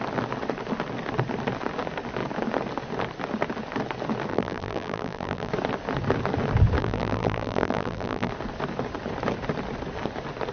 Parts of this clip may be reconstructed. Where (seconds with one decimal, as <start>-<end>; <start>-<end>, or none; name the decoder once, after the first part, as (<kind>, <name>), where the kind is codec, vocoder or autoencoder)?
4.3-5.5 (vocoder, BigVGAN v2); 6.8-8.3